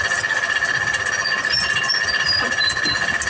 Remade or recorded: recorded